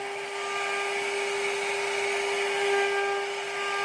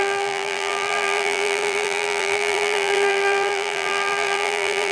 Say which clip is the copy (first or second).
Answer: second